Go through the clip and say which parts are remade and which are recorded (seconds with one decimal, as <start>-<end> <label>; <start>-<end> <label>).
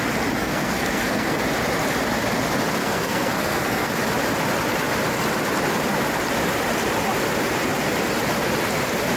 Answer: 0.0-0.4 recorded; 0.4-1.4 remade; 1.4-2.8 recorded; 2.8-3.9 remade; 3.9-9.2 recorded